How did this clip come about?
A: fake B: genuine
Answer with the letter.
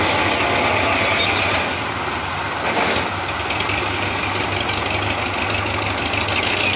B